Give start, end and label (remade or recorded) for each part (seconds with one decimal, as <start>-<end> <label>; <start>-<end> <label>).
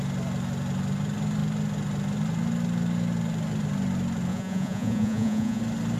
0.0-4.3 recorded; 4.3-5.6 remade; 5.6-6.0 recorded